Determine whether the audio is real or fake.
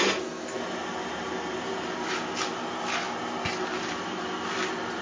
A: real